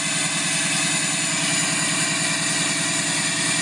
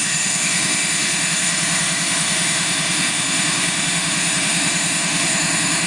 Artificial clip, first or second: second